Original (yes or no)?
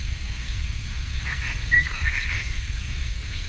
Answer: no